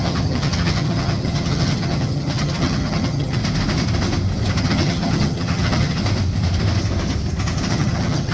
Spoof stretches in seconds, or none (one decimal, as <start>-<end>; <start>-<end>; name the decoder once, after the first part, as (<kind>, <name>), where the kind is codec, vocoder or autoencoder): 0.0-3.4 (vocoder, HiFi-GAN); 4.6-6.0; 7.7-8.3